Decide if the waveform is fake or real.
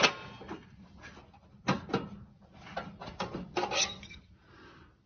real